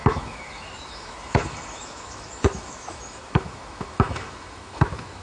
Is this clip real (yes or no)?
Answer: no